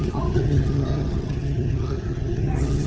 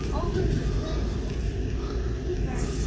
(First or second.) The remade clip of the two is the first